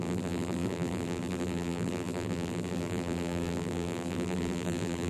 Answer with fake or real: fake